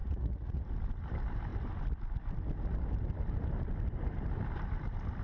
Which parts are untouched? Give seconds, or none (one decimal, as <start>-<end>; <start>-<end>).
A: 0.6-5.2